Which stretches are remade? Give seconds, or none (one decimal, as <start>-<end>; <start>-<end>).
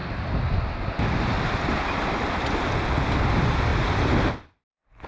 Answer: none